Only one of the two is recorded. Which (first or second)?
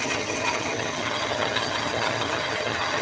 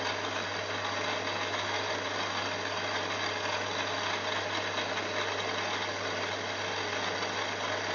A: second